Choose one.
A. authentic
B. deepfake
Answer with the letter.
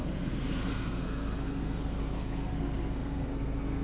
B